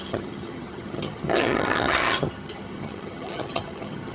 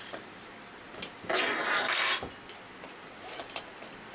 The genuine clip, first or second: second